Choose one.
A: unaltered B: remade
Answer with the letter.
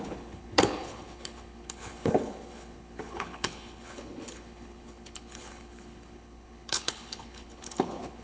B